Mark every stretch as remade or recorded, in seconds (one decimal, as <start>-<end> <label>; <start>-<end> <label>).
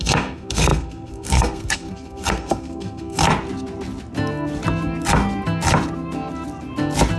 0.0-3.2 remade; 3.2-7.2 recorded